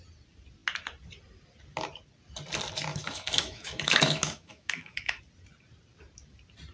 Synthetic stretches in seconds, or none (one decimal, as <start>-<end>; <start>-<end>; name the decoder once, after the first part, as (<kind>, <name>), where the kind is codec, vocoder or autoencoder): 2.9-5.2 (autoencoder, DAC-VAE)